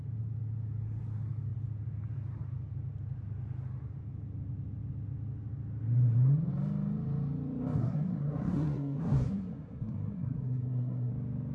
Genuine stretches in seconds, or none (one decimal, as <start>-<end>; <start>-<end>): 0.0-7.8; 11.1-11.5